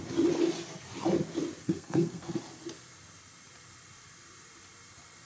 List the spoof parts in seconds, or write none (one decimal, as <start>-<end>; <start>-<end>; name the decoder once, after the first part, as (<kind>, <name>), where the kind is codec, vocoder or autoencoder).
1.6-2.4 (codec, SNAC)